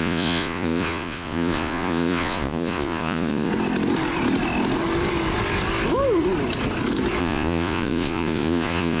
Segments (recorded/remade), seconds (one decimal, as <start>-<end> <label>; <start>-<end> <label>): 0.0-3.5 remade; 3.5-7.2 recorded; 7.2-9.0 remade